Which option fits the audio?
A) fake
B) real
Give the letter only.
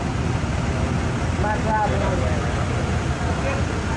B